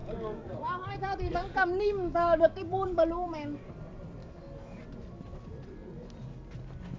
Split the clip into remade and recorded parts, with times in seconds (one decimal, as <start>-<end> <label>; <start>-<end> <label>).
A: 0.0-3.7 remade; 3.7-4.2 recorded; 4.2-4.8 remade; 4.8-7.0 recorded